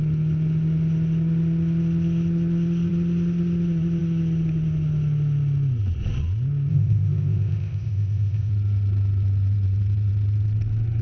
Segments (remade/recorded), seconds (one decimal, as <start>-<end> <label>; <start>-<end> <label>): 0.0-6.7 recorded; 6.7-8.5 remade; 8.5-11.0 recorded